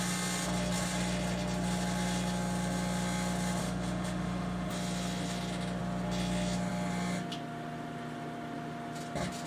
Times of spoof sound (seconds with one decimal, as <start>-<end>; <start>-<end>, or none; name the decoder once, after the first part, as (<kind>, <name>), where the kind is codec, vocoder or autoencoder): 3.6-4.7 (autoencoder, DAC-VAE)